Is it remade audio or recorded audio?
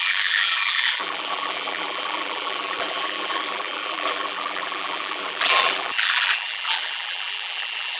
remade